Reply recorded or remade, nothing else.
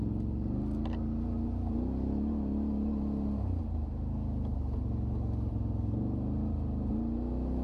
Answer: recorded